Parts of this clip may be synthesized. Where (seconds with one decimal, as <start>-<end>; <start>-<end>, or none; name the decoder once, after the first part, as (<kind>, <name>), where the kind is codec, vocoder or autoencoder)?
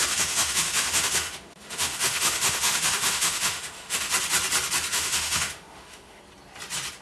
0.0-4.1 (autoencoder, DAC-VAE); 4.9-6.2